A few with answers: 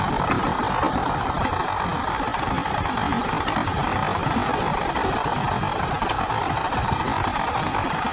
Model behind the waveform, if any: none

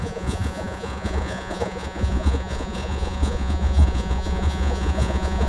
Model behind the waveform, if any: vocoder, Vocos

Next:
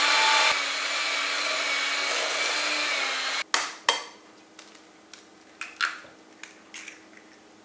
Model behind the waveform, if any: none